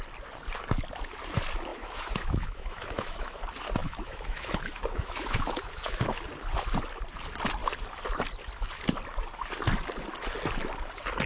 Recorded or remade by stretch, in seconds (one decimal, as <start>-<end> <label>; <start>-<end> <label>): 0.0-1.7 recorded; 1.7-3.4 remade; 3.4-3.8 recorded; 3.8-6.2 remade; 6.2-11.3 recorded